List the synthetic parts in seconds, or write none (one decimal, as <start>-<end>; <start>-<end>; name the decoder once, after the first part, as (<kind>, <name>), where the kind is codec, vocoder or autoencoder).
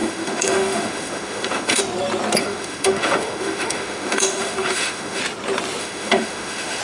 0.0-1.8 (autoencoder, DAC-VAE); 2.4-5.2; 5.8-6.8